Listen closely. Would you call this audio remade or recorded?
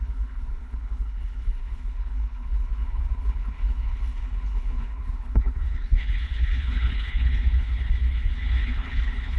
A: remade